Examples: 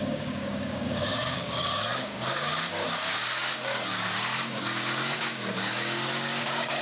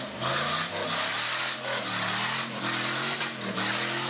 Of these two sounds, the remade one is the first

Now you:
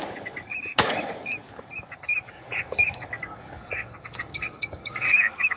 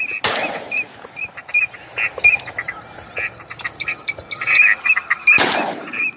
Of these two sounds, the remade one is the first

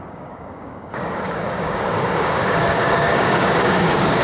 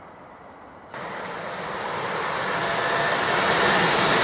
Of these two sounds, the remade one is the first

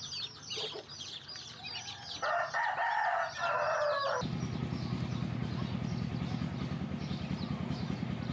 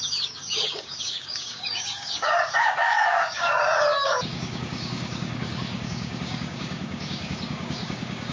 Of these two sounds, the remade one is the second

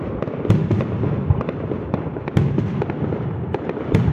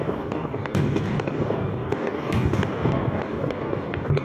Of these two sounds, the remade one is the second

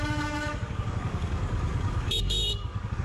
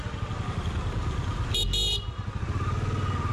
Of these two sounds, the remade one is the first